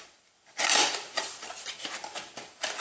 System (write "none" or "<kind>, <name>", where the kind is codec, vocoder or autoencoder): vocoder, BigVGAN v2